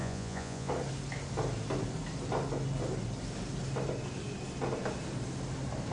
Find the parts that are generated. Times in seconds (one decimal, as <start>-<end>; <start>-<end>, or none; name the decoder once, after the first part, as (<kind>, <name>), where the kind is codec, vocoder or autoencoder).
0.0-0.7 (vocoder, Vocos)